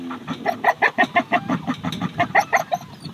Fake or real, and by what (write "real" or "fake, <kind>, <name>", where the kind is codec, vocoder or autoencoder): real